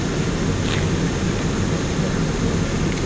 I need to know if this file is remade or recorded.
recorded